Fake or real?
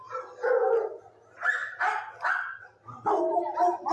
real